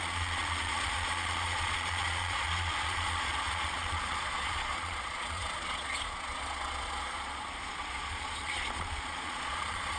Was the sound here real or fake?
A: fake